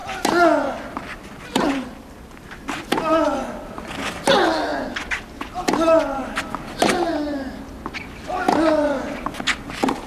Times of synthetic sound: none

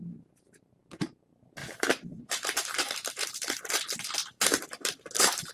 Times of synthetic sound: 1.6-3.3 (vocoder, BigVGAN v2); 4.2-5.5

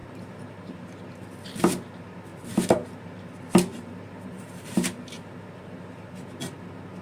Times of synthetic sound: 0.0-0.8 (vocoder, BigVGAN v2); 2.3-3.2; 3.7-6.1

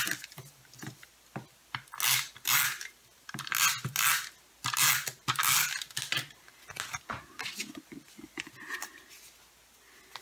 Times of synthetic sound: 2.7-3.5 (vocoder, BigVGAN v2)

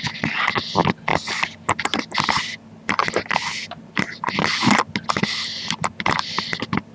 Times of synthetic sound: 1.1-1.8 (vocoder, BigVGAN v2)

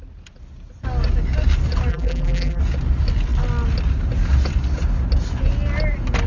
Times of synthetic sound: 1.9-2.6 (vocoder, BigVGAN v2)

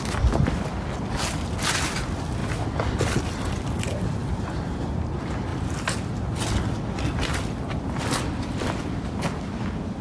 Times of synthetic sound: 4.2-4.9 (vocoder, BigVGAN v2)